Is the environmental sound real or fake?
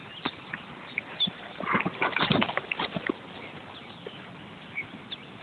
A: real